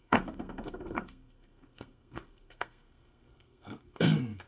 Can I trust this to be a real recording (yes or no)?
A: no